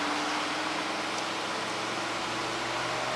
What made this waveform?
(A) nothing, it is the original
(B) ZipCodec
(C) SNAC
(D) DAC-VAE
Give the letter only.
A